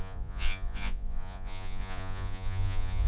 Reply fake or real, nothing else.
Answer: fake